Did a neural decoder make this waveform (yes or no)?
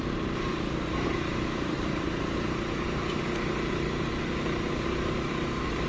yes